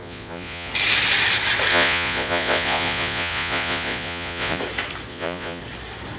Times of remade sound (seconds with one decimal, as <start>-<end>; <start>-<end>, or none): 0.0-0.7; 1.7-4.6; 5.1-5.6